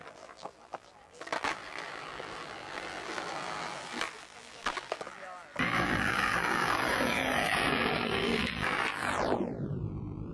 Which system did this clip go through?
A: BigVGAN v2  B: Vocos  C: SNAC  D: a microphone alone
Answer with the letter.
A